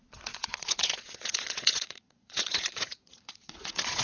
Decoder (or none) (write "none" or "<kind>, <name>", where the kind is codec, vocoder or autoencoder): vocoder, Vocos